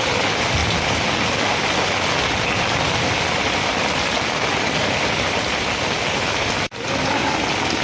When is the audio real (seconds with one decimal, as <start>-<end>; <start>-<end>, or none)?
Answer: 0.0-7.8